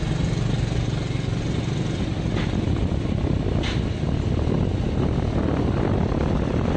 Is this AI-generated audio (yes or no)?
no